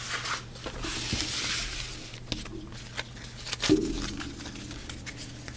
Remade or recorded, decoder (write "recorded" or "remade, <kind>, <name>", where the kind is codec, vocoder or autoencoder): recorded